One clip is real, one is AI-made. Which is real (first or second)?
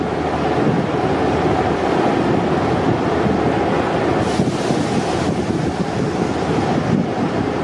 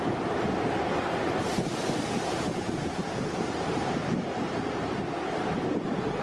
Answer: first